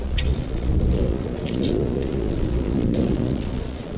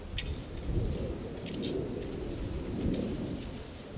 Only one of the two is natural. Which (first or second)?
second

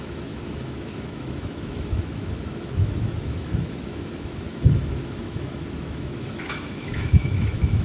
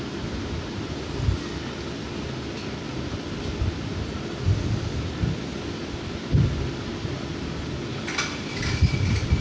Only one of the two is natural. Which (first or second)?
second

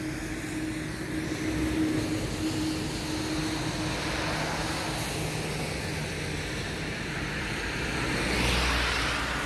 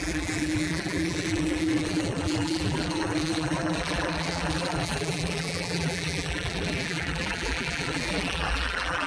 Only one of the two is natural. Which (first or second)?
first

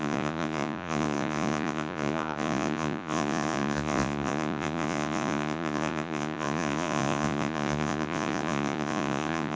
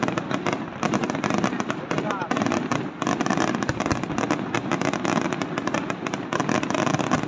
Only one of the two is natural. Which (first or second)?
second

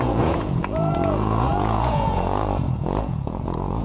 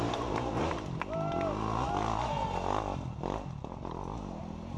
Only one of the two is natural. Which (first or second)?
second